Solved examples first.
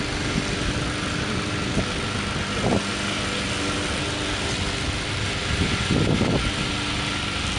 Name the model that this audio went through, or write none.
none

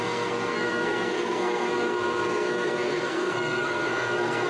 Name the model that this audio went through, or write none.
codec, SNAC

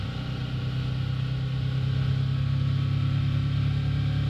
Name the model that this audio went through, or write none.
none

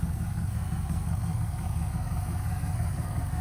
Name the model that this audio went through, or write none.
codec, SNAC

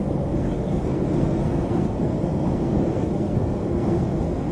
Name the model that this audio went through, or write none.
codec, SNAC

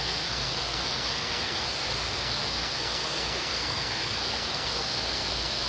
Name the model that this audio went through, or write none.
codec, SNAC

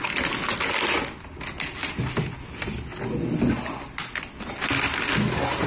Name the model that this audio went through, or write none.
none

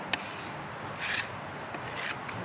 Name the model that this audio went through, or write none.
none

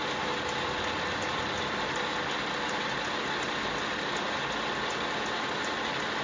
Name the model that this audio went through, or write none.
none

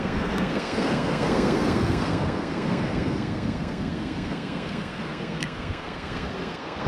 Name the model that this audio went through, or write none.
codec, SNAC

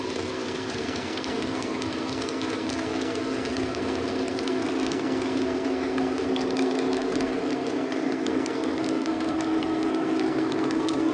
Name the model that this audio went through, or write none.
codec, SNAC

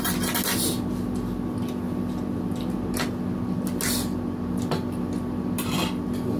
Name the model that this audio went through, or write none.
none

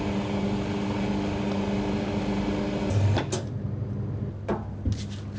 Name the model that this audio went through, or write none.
none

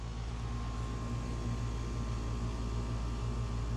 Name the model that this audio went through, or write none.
none